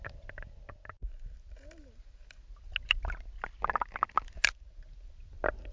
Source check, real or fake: real